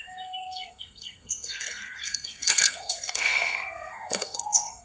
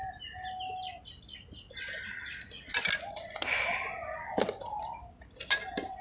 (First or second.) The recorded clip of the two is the second